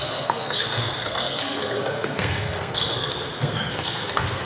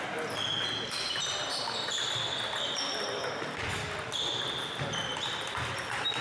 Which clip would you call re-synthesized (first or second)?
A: first